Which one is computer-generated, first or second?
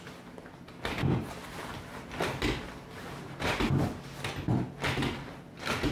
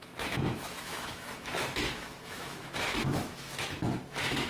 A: second